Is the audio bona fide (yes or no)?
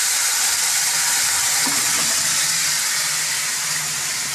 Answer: yes